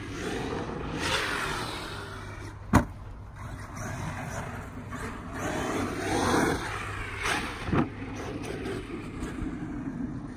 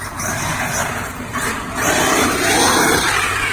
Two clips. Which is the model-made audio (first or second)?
second